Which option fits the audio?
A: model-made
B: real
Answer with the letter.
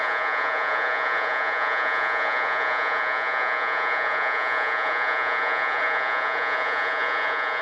A